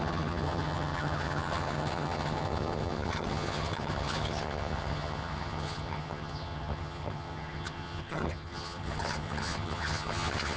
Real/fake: fake